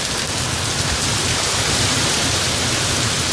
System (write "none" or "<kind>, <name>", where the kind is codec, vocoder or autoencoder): none